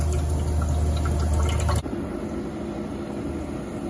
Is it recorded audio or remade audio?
recorded